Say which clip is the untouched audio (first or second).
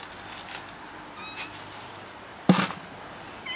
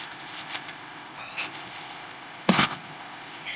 first